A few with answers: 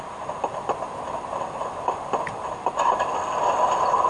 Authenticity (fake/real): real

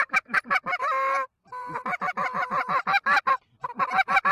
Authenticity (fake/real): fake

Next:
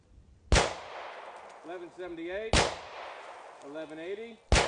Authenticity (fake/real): real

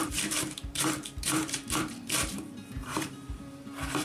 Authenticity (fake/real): fake